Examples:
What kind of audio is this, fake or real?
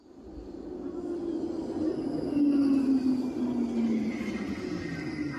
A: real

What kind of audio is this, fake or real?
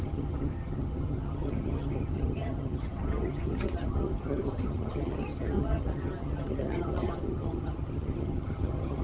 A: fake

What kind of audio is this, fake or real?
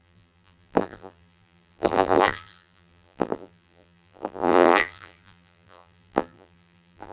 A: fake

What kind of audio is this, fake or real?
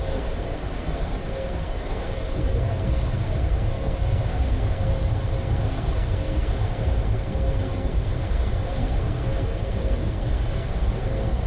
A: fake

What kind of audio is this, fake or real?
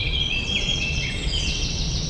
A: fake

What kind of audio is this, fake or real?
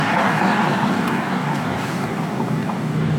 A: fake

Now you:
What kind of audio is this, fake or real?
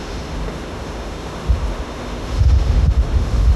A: fake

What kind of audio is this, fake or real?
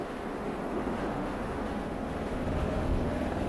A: fake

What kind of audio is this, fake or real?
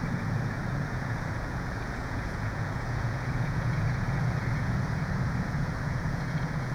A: fake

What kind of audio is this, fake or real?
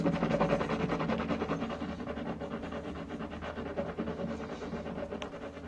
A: real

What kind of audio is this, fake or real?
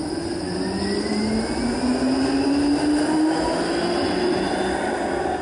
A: real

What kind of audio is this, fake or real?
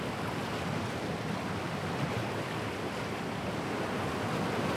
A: real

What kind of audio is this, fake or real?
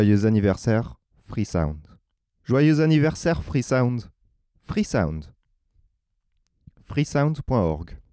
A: real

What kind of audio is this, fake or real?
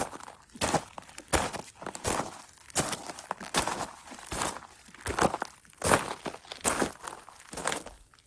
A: real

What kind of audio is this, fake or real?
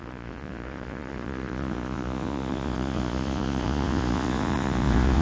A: fake